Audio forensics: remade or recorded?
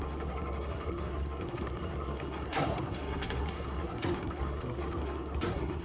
remade